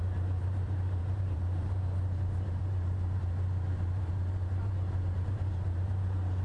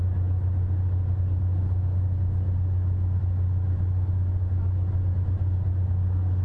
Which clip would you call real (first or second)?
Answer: second